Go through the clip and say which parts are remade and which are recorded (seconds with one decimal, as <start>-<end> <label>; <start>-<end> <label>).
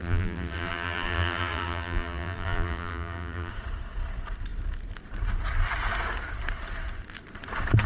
0.0-3.5 remade; 3.5-7.9 recorded